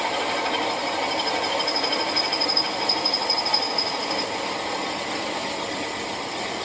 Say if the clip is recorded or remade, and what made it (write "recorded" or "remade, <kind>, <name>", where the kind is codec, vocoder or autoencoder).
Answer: recorded